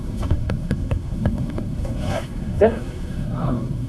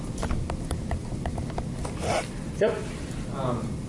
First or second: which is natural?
second